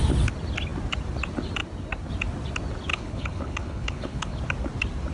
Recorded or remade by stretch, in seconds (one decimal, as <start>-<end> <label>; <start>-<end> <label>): 0.0-2.9 recorded; 2.9-4.4 remade; 4.4-5.1 recorded